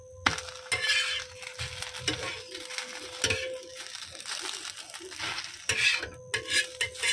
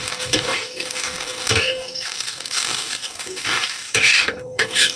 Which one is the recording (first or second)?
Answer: first